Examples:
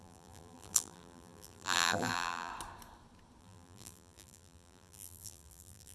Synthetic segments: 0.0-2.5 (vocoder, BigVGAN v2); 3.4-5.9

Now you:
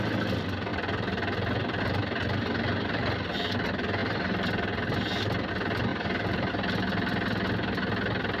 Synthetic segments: 0.7-1.8 (vocoder, BigVGAN v2); 4.0-5.5; 5.9-6.5

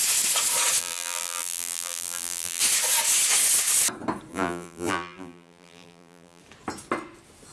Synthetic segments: 0.8-2.6 (vocoder, BigVGAN v2); 4.3-6.4